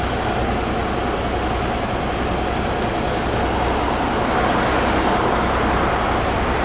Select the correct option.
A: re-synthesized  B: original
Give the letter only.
B